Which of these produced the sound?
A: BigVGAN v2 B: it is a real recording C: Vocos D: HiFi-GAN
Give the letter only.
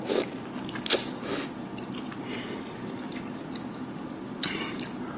B